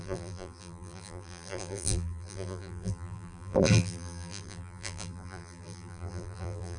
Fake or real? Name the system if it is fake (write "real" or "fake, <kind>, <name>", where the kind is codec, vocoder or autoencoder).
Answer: fake, vocoder, BigVGAN v2